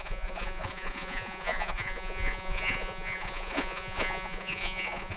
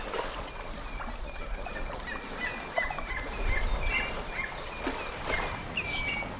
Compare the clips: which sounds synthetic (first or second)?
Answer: first